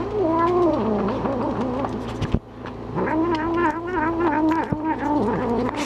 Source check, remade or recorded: recorded